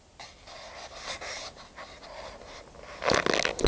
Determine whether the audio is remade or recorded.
recorded